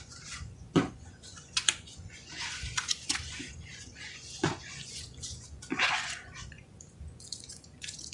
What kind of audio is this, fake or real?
fake